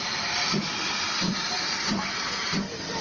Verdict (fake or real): real